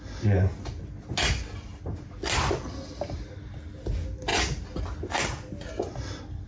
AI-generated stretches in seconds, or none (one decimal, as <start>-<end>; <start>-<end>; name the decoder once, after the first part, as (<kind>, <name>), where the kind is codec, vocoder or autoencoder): none